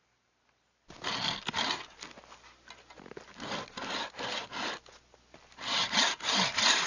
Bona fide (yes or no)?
yes